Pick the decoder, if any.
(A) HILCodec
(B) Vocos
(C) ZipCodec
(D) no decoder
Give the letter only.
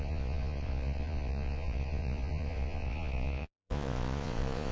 B